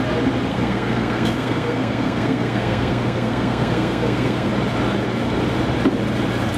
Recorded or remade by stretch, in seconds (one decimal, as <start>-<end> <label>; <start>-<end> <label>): 0.0-0.5 recorded; 0.5-4.5 remade; 4.5-6.6 recorded

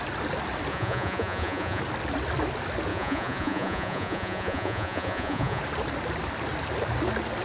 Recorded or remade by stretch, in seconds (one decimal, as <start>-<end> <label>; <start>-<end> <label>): 0.0-0.7 recorded; 0.7-1.8 remade; 1.8-2.9 recorded; 2.9-5.6 remade; 5.6-7.4 recorded